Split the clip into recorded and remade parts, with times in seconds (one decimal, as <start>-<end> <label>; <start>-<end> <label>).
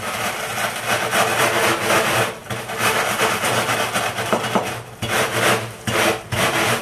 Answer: 0.0-6.8 recorded